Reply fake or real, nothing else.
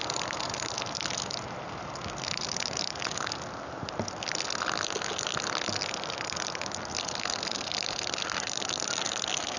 real